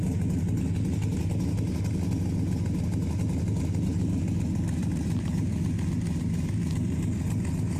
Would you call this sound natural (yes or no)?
yes